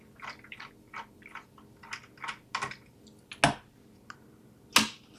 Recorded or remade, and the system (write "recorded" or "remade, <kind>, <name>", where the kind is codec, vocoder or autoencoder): recorded